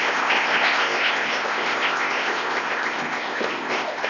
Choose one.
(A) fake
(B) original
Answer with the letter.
A